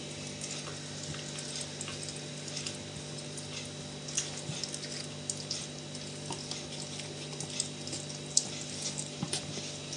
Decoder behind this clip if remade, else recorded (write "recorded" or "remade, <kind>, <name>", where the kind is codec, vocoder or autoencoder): recorded